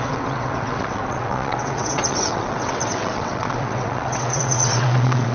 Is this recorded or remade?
remade